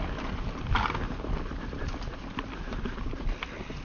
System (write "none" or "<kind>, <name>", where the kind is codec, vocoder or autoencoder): vocoder, BigVGAN v2